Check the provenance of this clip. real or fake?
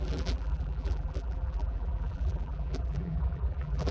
fake